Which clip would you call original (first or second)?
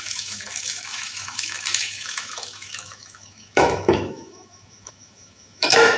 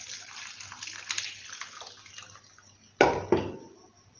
second